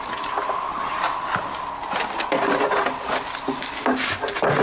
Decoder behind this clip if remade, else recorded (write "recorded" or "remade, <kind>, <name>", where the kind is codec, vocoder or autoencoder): recorded